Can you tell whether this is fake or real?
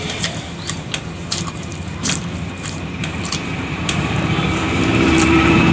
fake